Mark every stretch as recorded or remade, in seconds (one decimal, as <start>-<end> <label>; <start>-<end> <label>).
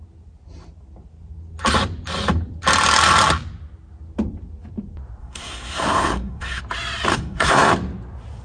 0.0-5.2 recorded; 5.2-6.6 remade; 6.6-7.1 recorded; 7.1-7.7 remade; 7.7-8.4 recorded